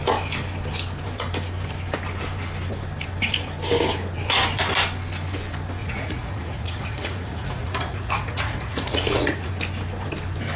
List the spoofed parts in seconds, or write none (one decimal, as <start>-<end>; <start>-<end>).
5.8-9.5